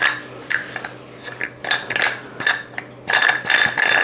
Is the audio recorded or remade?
recorded